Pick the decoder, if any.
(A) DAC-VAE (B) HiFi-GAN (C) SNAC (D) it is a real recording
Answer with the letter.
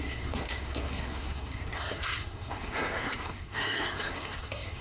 C